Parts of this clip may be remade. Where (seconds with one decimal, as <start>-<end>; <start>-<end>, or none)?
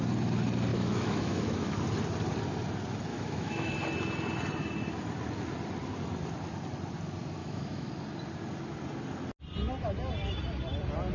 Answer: 0.7-1.8; 3.1-3.7; 7.4-7.9